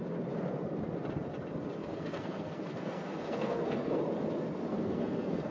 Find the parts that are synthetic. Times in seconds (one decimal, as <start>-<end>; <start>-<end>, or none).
1.8-4.0; 4.7-5.5